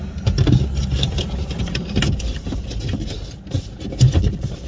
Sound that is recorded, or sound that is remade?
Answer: recorded